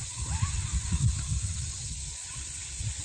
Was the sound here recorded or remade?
remade